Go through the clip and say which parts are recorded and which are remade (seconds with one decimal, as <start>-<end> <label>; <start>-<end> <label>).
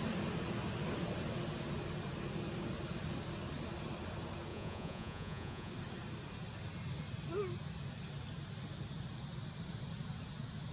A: 0.0-4.5 recorded; 4.5-5.7 remade; 5.7-10.7 recorded